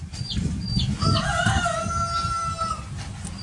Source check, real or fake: real